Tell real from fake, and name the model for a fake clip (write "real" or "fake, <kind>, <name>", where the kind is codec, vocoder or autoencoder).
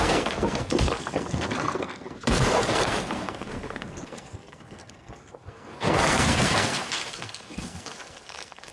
fake, codec, SNAC